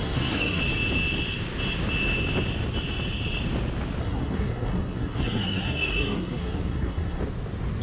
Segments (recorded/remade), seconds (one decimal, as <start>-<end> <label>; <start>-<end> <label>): 0.0-0.6 remade; 0.6-4.0 recorded; 4.0-7.2 remade; 7.2-7.8 recorded